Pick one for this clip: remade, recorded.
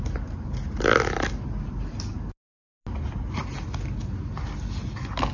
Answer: recorded